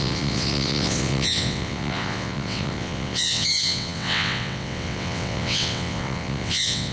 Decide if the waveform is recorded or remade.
remade